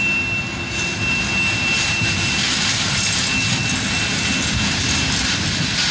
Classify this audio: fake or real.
real